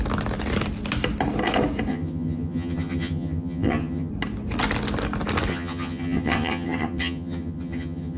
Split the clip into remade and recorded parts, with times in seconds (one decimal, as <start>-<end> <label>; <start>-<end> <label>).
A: 0.0-1.9 recorded; 1.9-4.1 remade; 4.1-5.5 recorded; 5.5-8.2 remade